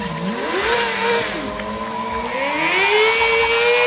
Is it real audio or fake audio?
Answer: real